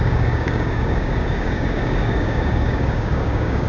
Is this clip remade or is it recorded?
remade